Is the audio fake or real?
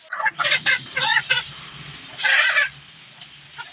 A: real